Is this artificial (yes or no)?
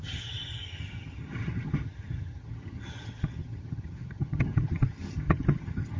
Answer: yes